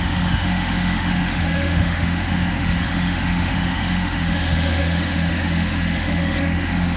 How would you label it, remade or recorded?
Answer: remade